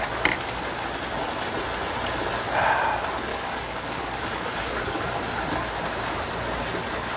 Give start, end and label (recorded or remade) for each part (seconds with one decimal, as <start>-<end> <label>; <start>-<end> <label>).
0.0-3.3 recorded; 3.3-5.2 remade; 5.2-7.2 recorded